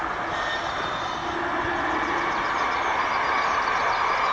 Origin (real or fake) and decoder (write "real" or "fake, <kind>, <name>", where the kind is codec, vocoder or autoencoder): real